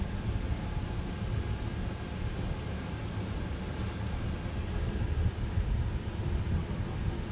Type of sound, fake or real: real